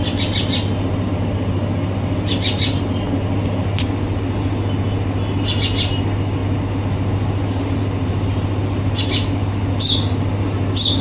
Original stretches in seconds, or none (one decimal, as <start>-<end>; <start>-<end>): 0.0-11.0